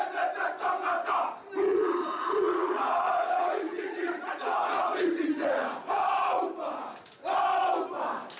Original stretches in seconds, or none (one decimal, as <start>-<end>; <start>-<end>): 0.0-1.7; 6.4-8.4